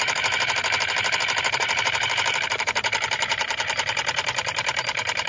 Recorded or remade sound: remade